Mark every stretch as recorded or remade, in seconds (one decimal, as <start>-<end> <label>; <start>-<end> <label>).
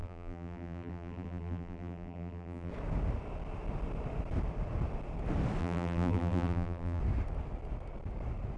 0.0-2.7 remade; 2.7-5.6 recorded; 5.6-7.0 remade; 7.0-8.6 recorded